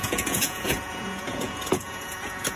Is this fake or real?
fake